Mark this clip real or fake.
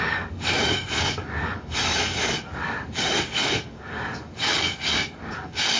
fake